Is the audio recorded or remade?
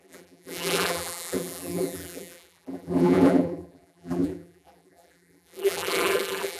remade